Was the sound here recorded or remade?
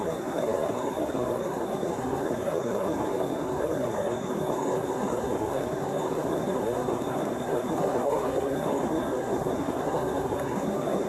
remade